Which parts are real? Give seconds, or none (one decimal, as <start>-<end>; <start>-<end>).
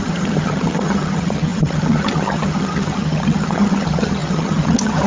none